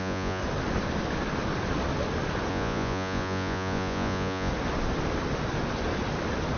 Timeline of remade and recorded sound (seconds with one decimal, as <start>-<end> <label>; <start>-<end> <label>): 0.0-0.4 remade; 0.4-2.5 recorded; 2.5-4.5 remade; 4.5-6.6 recorded